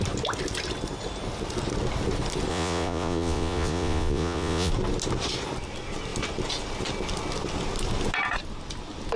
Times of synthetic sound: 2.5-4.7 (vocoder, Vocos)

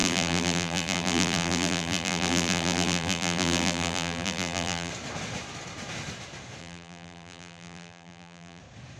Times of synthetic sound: 0.0-4.9 (vocoder, BigVGAN v2); 6.6-8.6

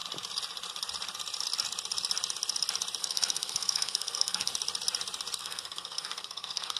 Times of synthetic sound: 3.0-4.5 (codec, SNAC); 5.4-6.8

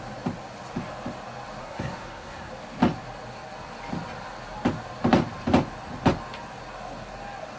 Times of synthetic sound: 1.6-2.5 (codec, SNAC)

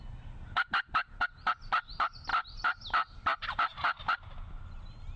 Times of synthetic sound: none

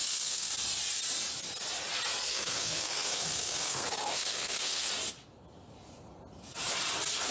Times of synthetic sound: 0.0-0.5 (codec, SNAC); 2.3-4.9

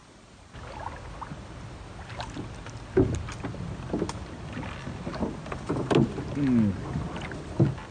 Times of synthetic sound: none